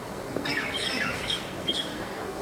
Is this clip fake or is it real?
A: fake